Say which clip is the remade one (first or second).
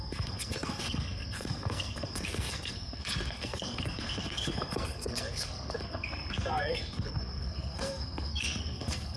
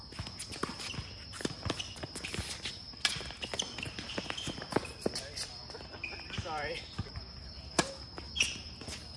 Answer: first